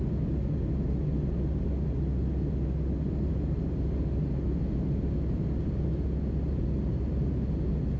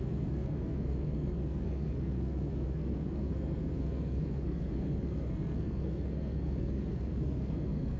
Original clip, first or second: first